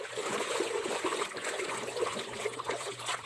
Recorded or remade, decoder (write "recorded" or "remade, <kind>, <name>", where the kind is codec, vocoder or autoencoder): remade, vocoder, Vocos